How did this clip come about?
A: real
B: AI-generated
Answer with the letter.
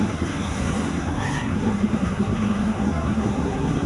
B